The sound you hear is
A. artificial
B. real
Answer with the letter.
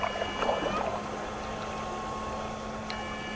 B